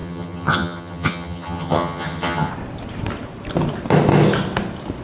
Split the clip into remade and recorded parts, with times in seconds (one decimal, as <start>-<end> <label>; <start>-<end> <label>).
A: 0.0-2.5 remade; 2.5-5.0 recorded

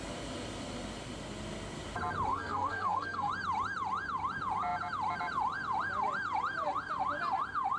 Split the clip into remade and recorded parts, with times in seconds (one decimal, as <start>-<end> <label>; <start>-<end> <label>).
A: 0.0-2.3 recorded; 2.3-3.3 remade; 3.3-7.8 recorded

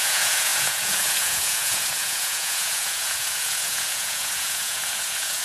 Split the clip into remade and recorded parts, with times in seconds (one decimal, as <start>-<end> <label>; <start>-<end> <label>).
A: 0.0-5.4 remade

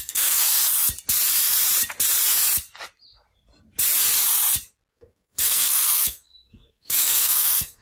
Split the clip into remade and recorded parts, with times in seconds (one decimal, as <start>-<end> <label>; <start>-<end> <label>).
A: 0.0-0.6 remade; 0.6-4.9 recorded; 4.9-7.8 remade

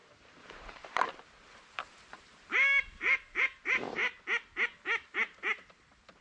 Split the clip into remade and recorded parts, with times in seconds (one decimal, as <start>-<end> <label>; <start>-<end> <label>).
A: 0.0-4.0 remade; 4.0-5.1 recorded; 5.1-6.2 remade

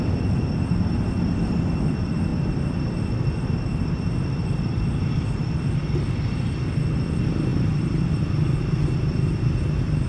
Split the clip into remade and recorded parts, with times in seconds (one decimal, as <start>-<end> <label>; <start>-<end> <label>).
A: 0.0-7.5 recorded; 7.5-8.2 remade; 8.2-10.1 recorded